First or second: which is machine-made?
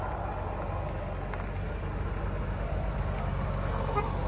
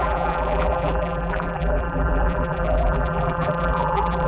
second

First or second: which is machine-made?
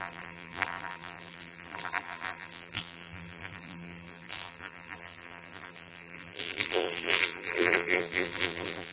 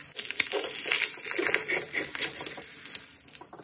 first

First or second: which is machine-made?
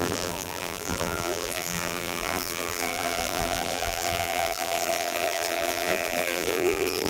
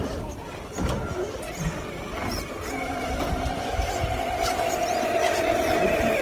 first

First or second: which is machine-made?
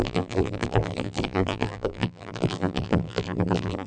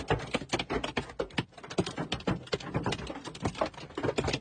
first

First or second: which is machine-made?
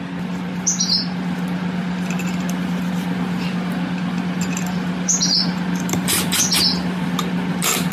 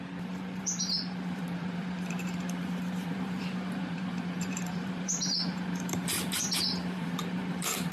second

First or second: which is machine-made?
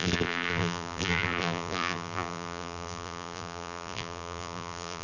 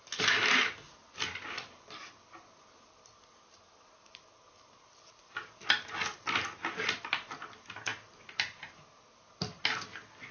first